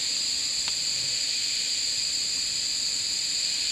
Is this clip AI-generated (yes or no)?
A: yes